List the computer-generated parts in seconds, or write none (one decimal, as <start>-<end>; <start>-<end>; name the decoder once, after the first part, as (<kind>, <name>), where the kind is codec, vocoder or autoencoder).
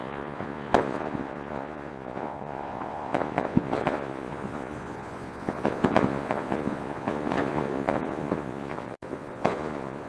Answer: 0.0-10.1 (vocoder, Vocos)